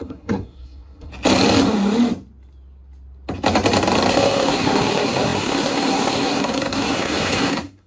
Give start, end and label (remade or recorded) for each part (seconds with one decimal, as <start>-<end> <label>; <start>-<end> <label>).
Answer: 0.0-1.1 remade; 1.1-4.1 recorded; 4.1-7.9 remade